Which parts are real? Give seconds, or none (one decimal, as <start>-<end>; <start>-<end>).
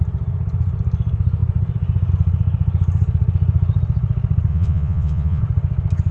0.0-4.5; 5.4-6.1